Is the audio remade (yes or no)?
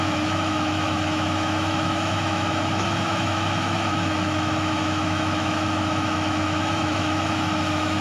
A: yes